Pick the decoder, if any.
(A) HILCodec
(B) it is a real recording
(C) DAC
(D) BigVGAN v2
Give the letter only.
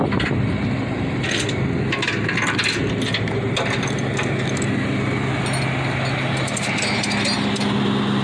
B